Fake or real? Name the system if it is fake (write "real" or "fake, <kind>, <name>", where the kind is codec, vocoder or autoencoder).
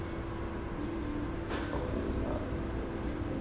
real